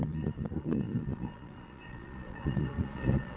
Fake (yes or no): yes